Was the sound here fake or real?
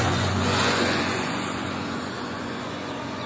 fake